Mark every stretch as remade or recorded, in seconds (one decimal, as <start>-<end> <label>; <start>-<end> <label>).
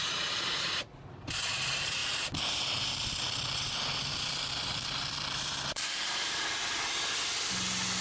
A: 0.0-2.0 recorded; 2.0-6.8 remade; 6.8-8.0 recorded